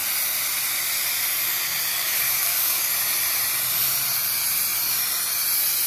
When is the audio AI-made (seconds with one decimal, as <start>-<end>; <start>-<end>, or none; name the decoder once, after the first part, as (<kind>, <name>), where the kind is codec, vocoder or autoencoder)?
1.9-2.9 (codec, DAC)